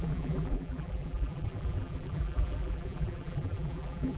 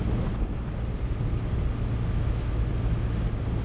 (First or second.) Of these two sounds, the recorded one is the second